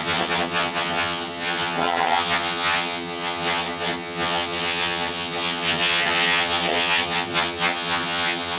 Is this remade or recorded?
remade